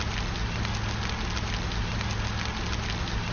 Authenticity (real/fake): real